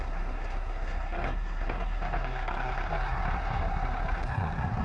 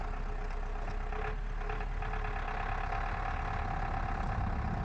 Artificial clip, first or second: first